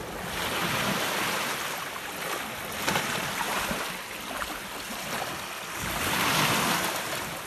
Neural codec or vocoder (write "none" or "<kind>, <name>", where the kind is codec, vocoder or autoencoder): none